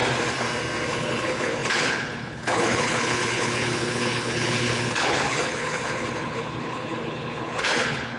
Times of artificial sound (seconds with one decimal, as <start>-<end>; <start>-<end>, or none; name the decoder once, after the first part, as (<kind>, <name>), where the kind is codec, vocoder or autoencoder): 0.9-8.2 (codec, HILCodec)